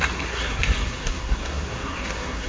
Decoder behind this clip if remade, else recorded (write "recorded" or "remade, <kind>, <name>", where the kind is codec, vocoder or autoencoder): remade, codec, SNAC